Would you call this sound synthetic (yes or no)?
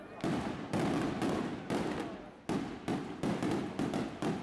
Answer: no